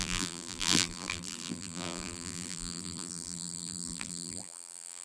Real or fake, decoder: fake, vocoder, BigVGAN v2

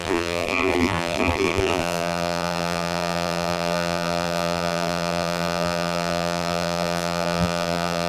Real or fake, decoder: fake, vocoder, BigVGAN v2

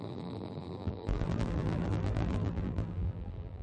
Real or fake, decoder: fake, vocoder, BigVGAN v2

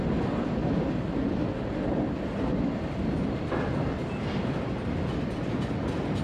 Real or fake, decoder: real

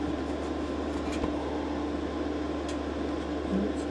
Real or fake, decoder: real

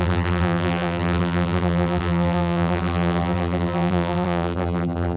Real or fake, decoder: fake, vocoder, BigVGAN v2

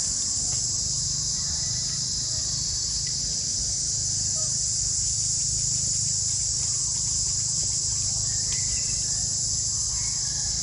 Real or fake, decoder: fake, vocoder, BigVGAN v2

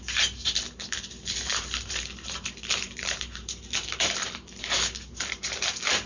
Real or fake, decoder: fake, vocoder, BigVGAN v2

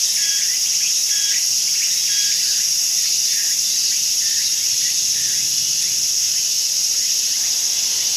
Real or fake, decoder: real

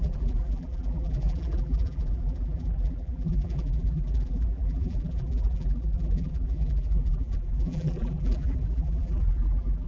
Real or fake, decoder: fake, vocoder, BigVGAN v2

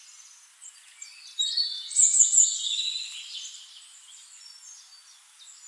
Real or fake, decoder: real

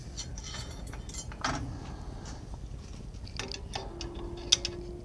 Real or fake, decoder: real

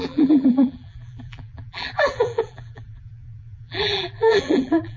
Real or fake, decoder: fake, vocoder, BigVGAN v2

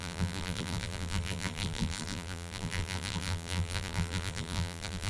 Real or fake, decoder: fake, vocoder, BigVGAN v2